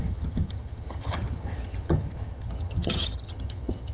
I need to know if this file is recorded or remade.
remade